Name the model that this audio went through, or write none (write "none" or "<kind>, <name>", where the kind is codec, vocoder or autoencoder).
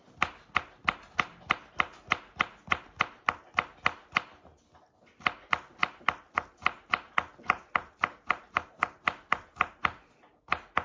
none